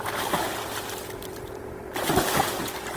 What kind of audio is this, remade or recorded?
recorded